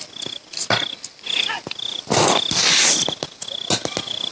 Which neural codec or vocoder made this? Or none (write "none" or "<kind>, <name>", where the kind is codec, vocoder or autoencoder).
none